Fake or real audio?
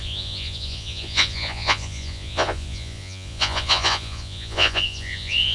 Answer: fake